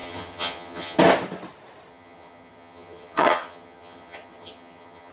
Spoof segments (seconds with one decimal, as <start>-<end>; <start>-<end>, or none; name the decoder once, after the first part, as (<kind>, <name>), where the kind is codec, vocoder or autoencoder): 0.0-1.0 (vocoder, HiFi-GAN); 1.9-5.1